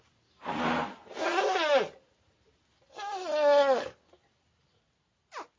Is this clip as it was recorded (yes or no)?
yes